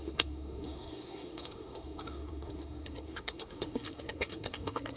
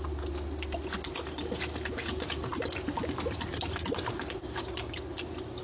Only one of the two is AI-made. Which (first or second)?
first